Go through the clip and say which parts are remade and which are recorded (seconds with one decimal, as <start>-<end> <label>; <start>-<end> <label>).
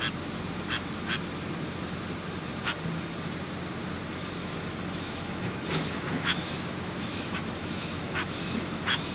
0.0-4.4 recorded; 4.4-9.1 remade